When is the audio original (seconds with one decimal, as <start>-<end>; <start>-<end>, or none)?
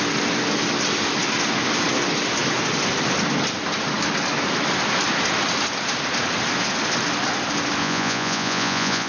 0.0-7.8